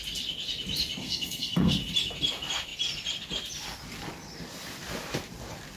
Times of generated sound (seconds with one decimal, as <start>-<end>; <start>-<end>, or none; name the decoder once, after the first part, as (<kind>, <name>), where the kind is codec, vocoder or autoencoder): 1.0-1.8 (codec, SNAC)